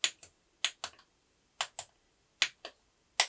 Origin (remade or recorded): recorded